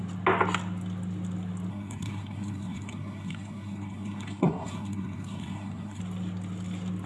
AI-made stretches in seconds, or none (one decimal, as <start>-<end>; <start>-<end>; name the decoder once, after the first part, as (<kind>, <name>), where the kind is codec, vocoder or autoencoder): 1.7-6.0 (codec, SNAC)